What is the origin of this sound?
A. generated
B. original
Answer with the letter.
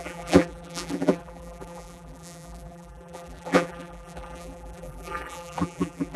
A